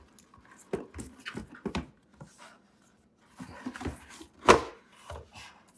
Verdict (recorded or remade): recorded